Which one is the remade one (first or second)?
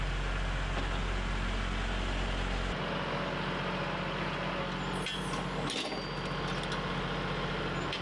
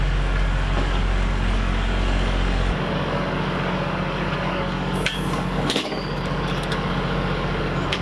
second